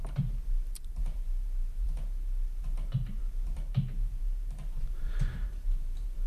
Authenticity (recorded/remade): remade